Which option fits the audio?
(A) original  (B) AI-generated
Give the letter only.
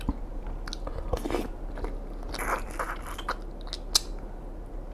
A